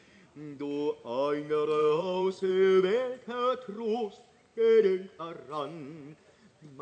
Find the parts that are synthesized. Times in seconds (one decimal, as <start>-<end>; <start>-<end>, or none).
1.8-2.5